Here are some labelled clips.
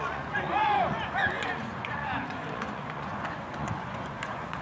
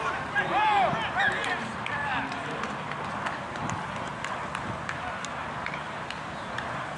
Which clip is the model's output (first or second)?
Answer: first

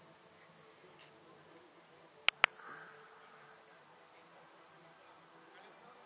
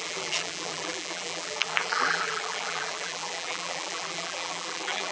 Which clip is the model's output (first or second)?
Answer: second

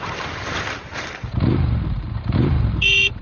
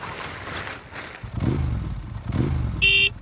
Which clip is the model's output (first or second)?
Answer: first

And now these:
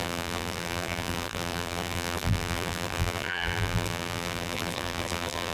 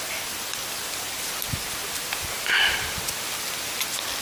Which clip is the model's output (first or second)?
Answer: first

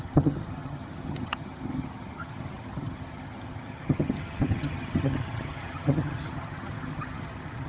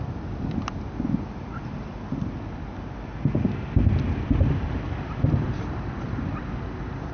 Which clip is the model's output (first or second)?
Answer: first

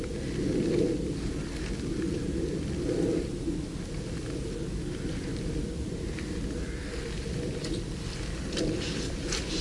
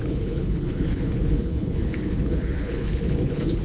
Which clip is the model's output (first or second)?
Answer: second